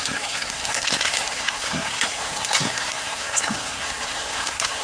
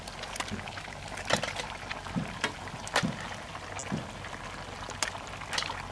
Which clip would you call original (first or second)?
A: second